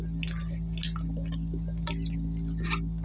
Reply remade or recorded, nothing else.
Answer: recorded